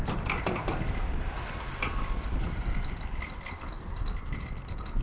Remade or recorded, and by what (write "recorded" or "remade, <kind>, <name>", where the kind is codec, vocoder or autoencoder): remade, vocoder, BigVGAN v2